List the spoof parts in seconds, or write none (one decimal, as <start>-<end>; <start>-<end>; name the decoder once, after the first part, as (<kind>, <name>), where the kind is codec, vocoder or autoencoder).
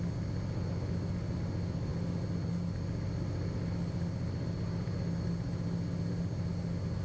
none